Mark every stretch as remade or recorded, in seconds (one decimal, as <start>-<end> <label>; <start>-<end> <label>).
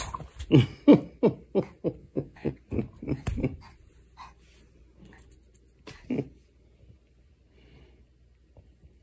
0.0-2.0 recorded; 2.0-2.5 remade; 2.5-9.0 recorded